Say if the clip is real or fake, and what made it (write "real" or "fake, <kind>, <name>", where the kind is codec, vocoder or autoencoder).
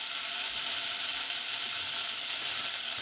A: real